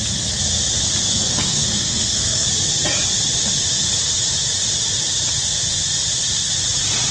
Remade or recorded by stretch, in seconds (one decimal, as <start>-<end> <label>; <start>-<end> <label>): 0.0-1.1 recorded; 1.1-2.5 remade; 2.5-7.1 recorded